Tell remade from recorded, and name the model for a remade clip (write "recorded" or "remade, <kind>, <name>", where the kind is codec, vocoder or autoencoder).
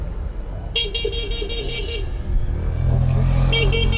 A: recorded